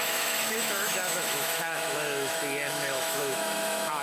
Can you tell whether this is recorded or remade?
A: remade